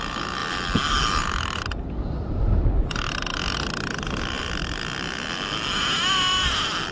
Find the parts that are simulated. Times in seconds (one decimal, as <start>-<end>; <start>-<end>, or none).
none